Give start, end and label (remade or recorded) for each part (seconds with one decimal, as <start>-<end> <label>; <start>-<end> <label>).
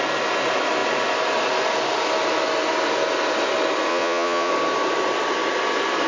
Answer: 0.0-3.9 recorded; 3.9-4.5 remade; 4.5-6.1 recorded